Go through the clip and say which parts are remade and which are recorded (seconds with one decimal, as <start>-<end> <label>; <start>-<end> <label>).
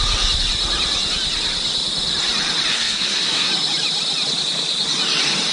0.0-2.7 recorded; 2.7-3.5 remade; 3.5-5.5 recorded